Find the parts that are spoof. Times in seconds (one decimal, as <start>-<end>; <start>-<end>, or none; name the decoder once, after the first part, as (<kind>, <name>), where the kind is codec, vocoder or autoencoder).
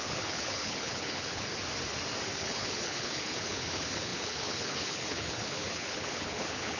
0.0-1.5 (codec, HILCodec); 2.3-6.8